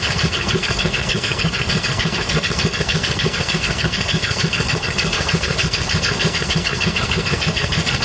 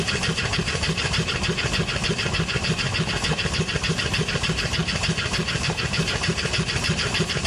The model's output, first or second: first